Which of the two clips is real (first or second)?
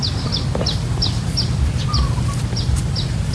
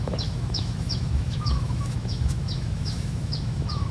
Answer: first